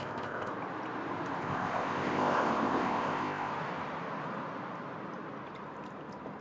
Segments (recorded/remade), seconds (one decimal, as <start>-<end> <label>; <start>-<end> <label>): 0.0-0.5 remade; 0.5-1.4 recorded; 1.4-3.5 remade; 3.5-6.4 recorded

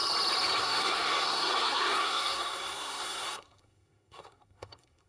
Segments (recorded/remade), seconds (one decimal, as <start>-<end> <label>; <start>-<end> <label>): 0.0-0.6 recorded; 0.6-5.1 remade

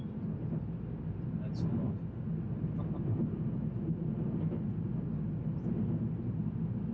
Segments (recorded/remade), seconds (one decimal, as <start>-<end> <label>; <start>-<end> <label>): 0.0-6.9 recorded

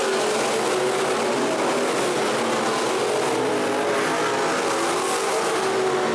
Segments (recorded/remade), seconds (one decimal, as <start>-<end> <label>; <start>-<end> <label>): 0.0-6.1 recorded

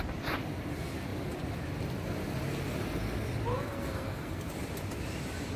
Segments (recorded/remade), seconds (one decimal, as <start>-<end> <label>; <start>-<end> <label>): 0.0-3.5 recorded; 3.5-4.5 remade; 4.5-5.6 recorded

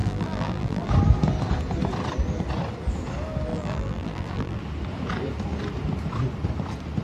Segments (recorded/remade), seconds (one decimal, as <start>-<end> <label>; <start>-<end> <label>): 0.0-0.9 remade; 0.9-3.5 recorded; 3.5-4.6 remade; 4.6-7.0 recorded